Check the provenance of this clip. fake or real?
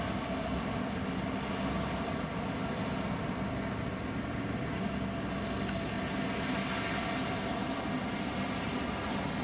real